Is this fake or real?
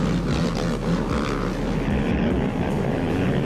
real